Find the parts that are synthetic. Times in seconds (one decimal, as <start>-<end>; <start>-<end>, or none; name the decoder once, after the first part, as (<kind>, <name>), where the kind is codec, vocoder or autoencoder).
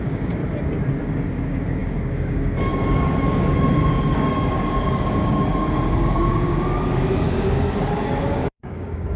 0.0-0.4 (codec, DAC); 1.0-9.2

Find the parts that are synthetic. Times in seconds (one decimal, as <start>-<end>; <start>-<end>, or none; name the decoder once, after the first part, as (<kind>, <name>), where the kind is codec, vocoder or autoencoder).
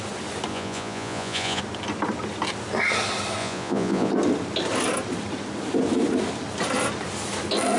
0.5-1.6 (vocoder, Vocos); 3.4-4.1